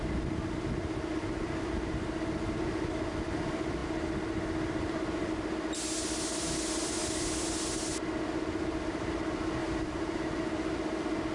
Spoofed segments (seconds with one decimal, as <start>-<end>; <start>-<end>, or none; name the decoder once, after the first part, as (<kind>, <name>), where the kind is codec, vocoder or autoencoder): 9.6-10.2 (vocoder, BigVGAN v2)